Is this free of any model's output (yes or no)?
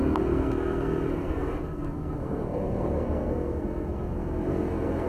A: no